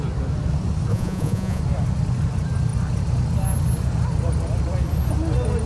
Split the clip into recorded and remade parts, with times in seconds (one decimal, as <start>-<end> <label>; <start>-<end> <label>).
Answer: 0.0-0.9 recorded; 0.9-1.6 remade; 1.6-5.7 recorded